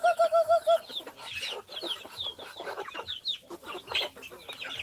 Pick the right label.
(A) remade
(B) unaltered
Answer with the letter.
B